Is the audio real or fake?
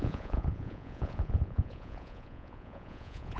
fake